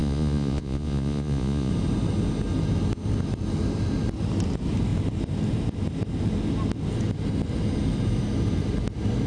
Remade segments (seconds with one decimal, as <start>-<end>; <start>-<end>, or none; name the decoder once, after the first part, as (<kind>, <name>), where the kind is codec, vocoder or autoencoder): 0.0-1.7 (vocoder, Vocos)